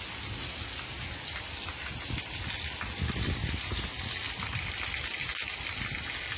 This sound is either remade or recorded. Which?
recorded